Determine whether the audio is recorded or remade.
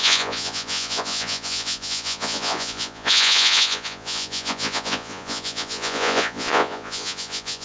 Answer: remade